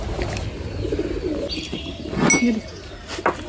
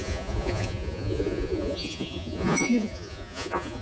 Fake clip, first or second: second